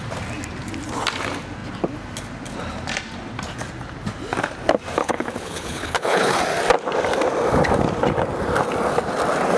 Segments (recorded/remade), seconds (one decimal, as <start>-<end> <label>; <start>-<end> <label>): 0.0-5.0 recorded; 5.0-6.4 remade; 6.4-9.6 recorded